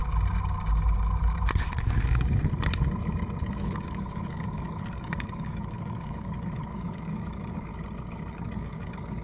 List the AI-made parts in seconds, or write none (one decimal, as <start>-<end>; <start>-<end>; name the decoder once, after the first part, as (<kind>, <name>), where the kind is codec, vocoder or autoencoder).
3.4-7.7 (codec, DAC); 8.3-9.2

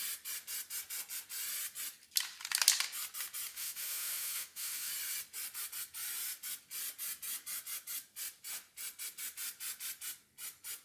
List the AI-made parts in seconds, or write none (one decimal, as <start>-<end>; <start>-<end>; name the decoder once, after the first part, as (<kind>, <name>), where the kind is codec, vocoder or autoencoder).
3.5-4.9 (autoencoder, DAC-VAE)

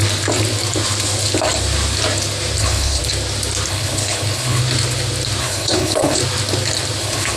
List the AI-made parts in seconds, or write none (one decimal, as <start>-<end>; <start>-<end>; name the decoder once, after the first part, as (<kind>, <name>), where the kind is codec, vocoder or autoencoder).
2.6-3.0 (codec, HILCodec); 3.7-4.6; 5.4-6.2; 7.0-7.4

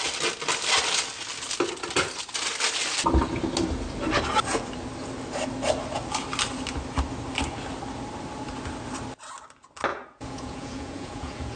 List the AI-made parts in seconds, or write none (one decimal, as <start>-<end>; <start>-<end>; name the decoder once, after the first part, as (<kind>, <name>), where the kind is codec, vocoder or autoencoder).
9.9-11.6 (vocoder, Vocos)

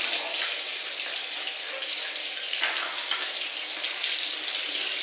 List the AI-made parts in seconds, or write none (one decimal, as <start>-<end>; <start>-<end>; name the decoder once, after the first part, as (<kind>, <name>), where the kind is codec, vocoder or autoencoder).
none